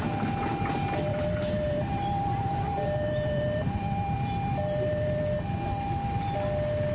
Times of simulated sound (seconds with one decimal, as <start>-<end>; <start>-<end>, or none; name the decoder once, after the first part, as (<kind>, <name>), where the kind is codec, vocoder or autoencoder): 1.1-5.2 (vocoder, BigVGAN v2)